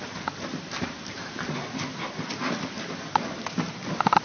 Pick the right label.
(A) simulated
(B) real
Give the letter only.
B